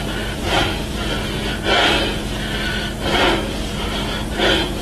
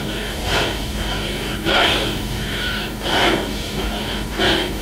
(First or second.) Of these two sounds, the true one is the first